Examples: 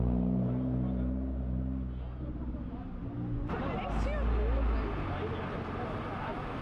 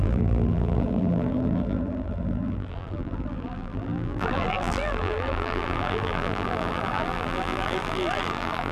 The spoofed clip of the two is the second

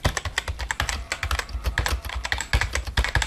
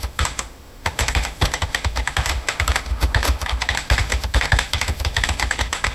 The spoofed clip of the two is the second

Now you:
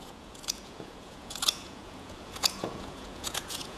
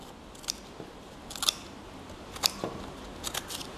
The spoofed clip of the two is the first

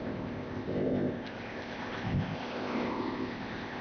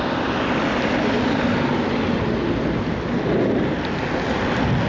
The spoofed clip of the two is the first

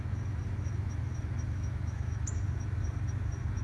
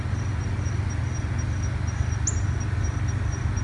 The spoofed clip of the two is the first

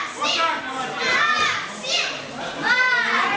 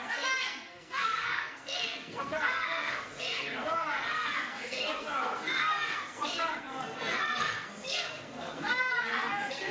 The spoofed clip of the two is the second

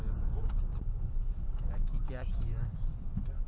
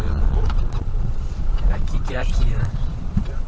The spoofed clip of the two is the second